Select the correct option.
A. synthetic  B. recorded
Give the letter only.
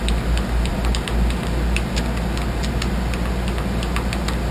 B